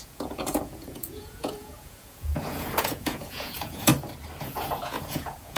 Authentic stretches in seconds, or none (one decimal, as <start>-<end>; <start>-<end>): 3.9-4.4